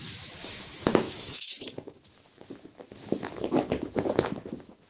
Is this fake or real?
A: fake